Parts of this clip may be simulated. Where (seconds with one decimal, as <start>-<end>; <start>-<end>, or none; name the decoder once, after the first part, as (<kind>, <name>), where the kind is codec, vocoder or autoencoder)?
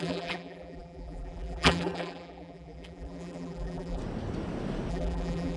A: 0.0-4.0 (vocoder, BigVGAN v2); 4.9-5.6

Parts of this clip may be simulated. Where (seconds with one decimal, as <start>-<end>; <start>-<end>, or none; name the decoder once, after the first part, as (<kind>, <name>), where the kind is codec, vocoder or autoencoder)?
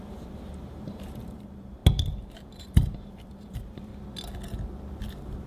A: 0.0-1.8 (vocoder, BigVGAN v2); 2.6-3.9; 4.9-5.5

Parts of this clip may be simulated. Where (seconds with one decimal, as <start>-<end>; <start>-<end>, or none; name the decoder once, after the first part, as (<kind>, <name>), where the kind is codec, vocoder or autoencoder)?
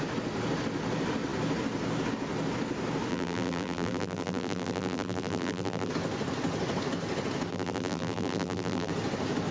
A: 3.1-5.9 (vocoder, BigVGAN v2); 7.5-8.9